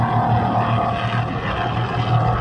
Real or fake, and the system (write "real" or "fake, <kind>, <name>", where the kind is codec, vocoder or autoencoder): real